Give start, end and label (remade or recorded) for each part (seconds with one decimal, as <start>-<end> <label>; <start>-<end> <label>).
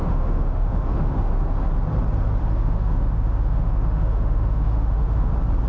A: 0.0-1.3 remade; 1.3-2.4 recorded; 2.4-5.3 remade; 5.3-5.7 recorded